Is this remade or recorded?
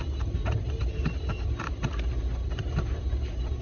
remade